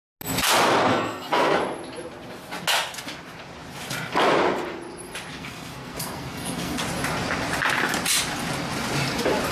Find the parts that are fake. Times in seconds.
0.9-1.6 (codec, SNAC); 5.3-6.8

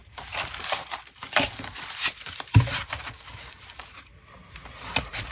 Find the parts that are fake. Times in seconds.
0.0-5.3 (vocoder, BigVGAN v2)

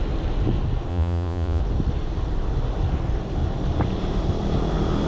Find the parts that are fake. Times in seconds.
0.9-1.6 (vocoder, Vocos)

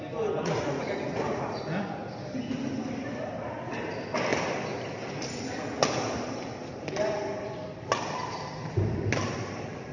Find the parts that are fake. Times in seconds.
0.4-1.6 (vocoder, Vocos)

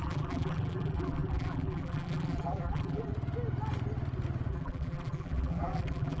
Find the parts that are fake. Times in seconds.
0.0-3.1 (vocoder, BigVGAN v2); 4.5-6.2

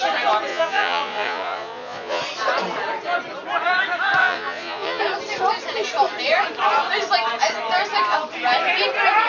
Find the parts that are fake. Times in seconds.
0.5-2.2 (vocoder, Vocos); 4.2-5.0

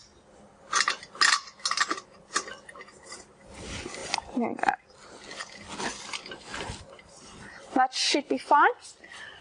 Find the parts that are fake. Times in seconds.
4.0-4.7 (vocoder, BigVGAN v2); 6.5-8.1

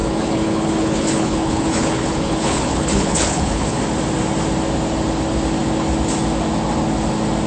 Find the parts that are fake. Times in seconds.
0.0-3.8 (codec, HILCodec)